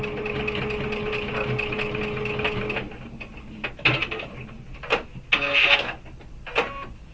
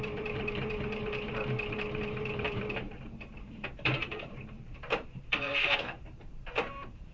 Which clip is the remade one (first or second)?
second